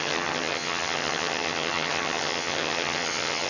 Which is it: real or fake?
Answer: fake